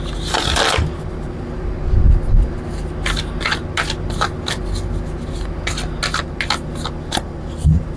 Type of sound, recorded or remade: recorded